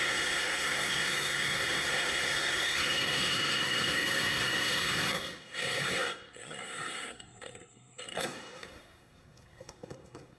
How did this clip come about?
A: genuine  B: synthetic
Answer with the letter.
B